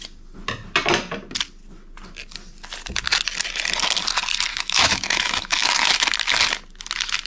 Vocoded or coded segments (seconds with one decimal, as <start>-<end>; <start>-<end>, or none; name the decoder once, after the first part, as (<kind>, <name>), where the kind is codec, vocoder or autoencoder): 4.5-5.9 (autoencoder, DAC-VAE)